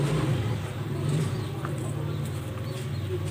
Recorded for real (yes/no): yes